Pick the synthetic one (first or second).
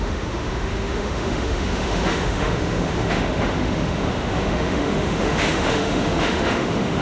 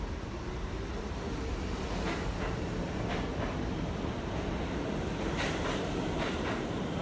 first